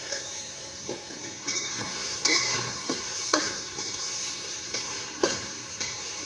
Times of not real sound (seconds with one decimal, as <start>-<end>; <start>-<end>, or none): 0.0-6.3